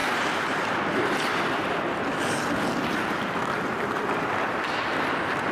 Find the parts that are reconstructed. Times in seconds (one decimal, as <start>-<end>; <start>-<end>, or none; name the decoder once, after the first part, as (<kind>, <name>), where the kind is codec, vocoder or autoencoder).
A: 2.9-3.7 (vocoder, BigVGAN v2); 5.1-5.5